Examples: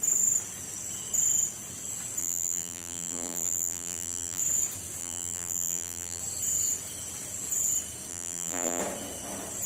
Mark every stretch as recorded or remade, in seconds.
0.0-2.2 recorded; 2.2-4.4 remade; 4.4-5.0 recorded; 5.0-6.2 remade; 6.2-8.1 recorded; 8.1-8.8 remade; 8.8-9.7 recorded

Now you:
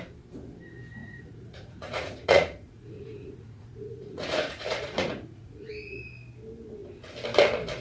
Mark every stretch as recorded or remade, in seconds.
0.0-1.0 recorded; 1.0-5.7 remade; 5.7-7.8 recorded

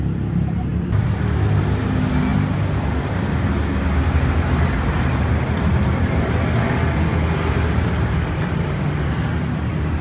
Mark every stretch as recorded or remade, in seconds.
0.0-10.0 recorded

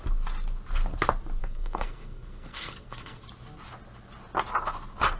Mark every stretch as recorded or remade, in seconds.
0.0-1.4 recorded; 1.4-3.2 remade; 3.2-5.2 recorded

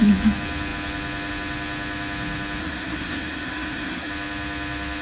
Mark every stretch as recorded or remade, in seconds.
0.0-2.6 recorded; 2.6-4.1 remade; 4.1-5.0 recorded

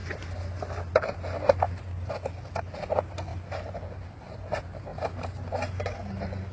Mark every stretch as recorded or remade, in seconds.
0.0-0.9 remade; 0.9-4.9 recorded; 4.9-5.8 remade; 5.8-6.5 recorded

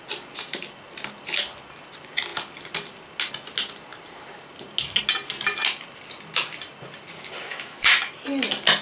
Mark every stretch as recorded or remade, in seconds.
0.0-7.5 recorded; 7.5-8.1 remade; 8.1-8.8 recorded

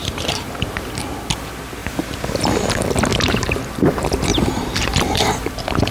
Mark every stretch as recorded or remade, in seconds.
0.0-0.9 remade; 0.9-3.1 recorded; 3.1-3.6 remade; 3.6-4.3 recorded; 4.3-5.3 remade; 5.3-5.9 recorded